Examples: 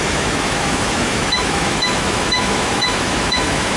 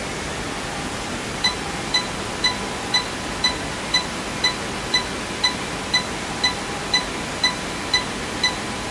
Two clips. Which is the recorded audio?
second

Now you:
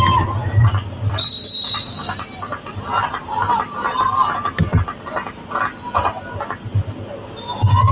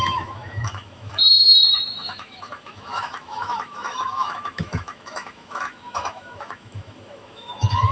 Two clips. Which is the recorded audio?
first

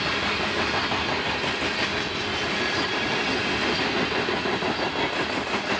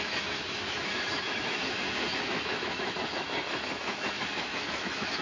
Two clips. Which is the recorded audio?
first